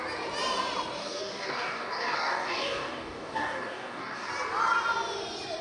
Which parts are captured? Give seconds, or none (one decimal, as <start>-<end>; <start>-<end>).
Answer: 0.0-1.0; 4.3-5.6

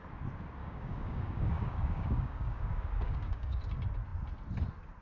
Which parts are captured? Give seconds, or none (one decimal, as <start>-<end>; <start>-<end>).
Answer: 0.0-0.6; 3.6-5.0

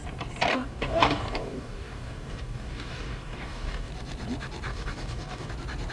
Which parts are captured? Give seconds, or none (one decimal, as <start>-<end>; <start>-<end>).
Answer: 0.0-0.5; 3.9-4.7; 5.5-5.9

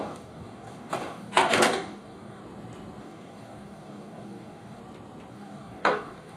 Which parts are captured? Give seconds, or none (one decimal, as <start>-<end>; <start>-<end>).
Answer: 2.4-3.0; 4.8-5.3

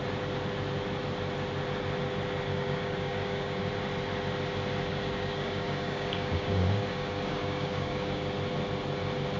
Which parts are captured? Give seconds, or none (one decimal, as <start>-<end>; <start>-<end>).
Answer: 0.0-2.5; 3.7-4.9; 8.2-9.4

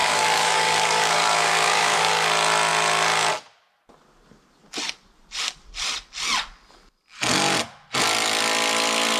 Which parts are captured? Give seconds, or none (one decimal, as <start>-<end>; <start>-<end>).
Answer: 2.1-9.2

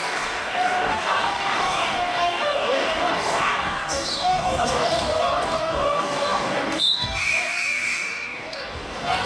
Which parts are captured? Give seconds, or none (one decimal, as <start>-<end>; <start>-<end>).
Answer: none